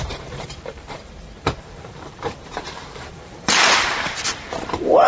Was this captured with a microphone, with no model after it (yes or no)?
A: no